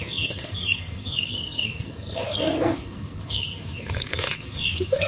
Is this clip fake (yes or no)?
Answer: yes